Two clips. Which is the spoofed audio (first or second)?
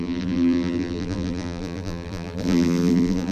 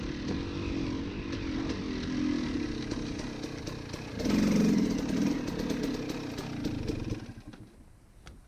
first